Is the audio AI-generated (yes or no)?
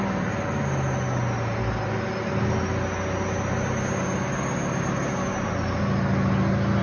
no